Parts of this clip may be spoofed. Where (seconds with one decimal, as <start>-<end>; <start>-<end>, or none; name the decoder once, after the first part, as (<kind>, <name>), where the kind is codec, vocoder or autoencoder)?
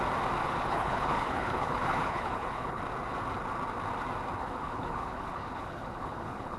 0.4-2.8 (codec, HILCodec); 4.4-6.6